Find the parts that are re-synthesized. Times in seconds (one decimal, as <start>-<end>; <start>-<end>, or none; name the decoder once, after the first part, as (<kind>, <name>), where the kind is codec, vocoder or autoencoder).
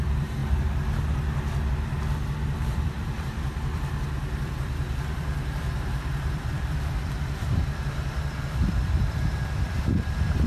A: 0.0-0.4 (vocoder, BigVGAN v2); 1.7-10.5